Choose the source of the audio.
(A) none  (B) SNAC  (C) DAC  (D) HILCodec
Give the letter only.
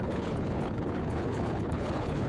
D